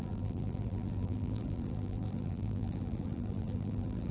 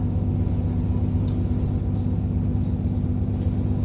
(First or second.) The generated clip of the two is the first